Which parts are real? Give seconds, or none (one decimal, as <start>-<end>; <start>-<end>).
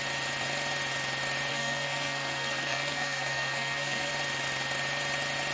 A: 0.0-1.5; 4.1-5.5